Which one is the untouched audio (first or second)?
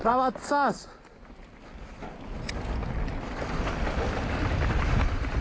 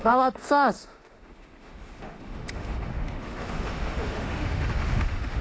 first